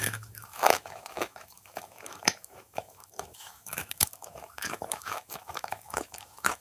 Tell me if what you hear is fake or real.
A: fake